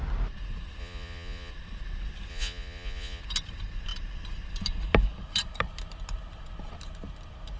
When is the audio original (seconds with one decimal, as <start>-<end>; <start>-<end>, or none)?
0.0-0.8; 1.5-2.3; 3.2-7.6